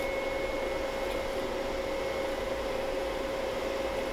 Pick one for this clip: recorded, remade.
recorded